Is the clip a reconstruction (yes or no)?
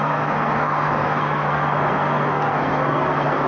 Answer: yes